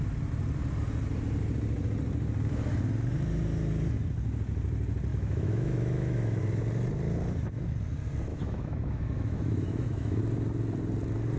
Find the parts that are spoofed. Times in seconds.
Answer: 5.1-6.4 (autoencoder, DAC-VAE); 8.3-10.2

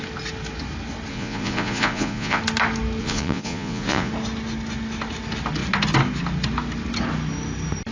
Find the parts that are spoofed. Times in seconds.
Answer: 1.1-2.4 (vocoder, Vocos); 3.0-4.1

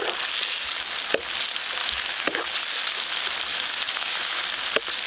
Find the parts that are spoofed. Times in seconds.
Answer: 1.8-2.4 (autoencoder, DAC-VAE); 3.5-4.4

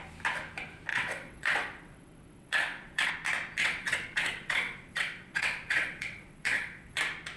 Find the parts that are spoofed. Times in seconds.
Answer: 0.9-3.1 (vocoder, WaveNeXt); 3.6-7.0

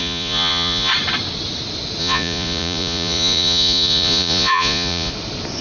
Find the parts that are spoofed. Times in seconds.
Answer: 0.0-0.9 (vocoder, Vocos); 2.0-5.1

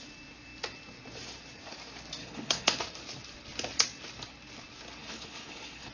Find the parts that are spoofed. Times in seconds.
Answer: 2.2-2.8 (codec, HILCodec); 5.0-5.9

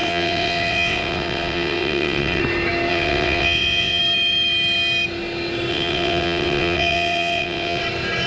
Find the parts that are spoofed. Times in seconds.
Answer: 0.0-2.4 (vocoder, WaveNeXt); 2.9-4.0; 5.7-7.8